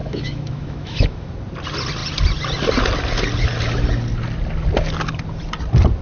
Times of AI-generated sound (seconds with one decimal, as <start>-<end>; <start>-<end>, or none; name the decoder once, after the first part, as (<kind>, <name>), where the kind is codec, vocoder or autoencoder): 0.0-1.3 (autoencoder, DAC-VAE)